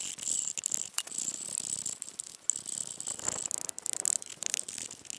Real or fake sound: real